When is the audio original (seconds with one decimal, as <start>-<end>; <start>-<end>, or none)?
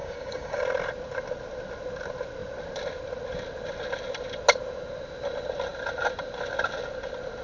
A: 0.6-7.4